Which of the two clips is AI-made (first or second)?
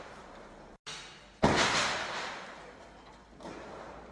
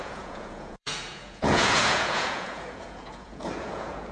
second